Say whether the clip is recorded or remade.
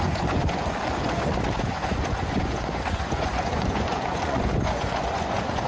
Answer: remade